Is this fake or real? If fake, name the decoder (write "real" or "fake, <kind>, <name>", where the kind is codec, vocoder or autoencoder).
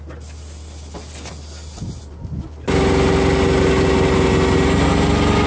real